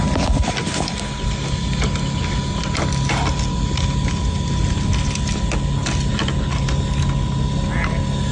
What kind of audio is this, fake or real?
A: real